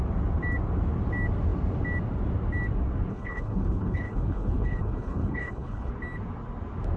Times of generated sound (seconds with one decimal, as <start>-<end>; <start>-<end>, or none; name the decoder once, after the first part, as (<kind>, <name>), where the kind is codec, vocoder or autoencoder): 3.1-5.9 (codec, HILCodec)